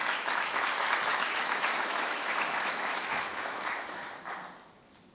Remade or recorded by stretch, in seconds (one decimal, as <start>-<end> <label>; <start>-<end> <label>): 0.0-0.6 remade; 0.6-1.1 recorded; 1.1-4.1 remade; 4.1-5.1 recorded